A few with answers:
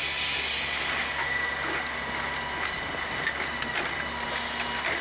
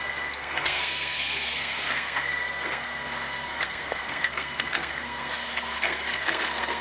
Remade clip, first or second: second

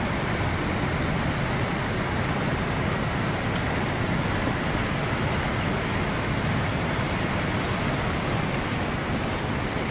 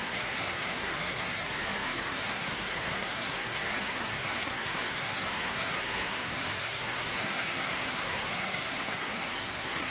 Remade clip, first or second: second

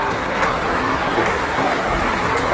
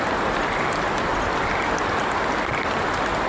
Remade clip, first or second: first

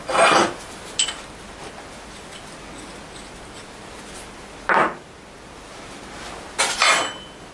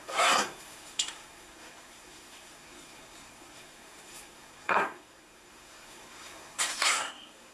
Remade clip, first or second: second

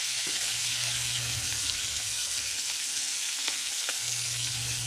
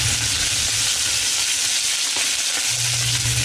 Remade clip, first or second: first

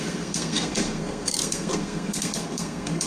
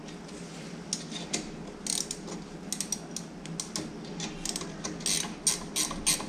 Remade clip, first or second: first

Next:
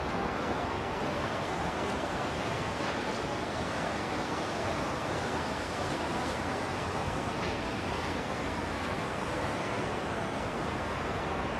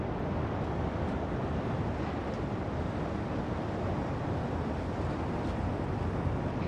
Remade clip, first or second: first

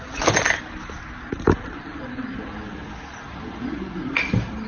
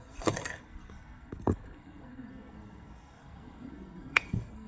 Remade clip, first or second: second